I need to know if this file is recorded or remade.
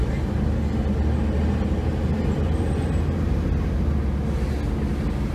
recorded